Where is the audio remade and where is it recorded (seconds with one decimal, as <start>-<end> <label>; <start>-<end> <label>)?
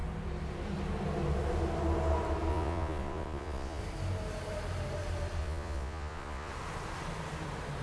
0.0-2.5 recorded; 2.5-3.8 remade; 3.8-5.4 recorded; 5.4-6.5 remade; 6.5-7.8 recorded